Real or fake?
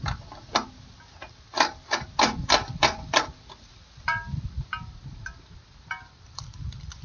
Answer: real